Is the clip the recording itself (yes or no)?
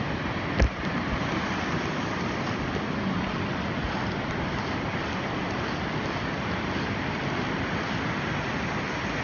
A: yes